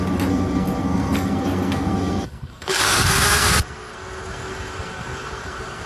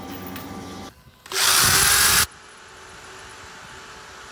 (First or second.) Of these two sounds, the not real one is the first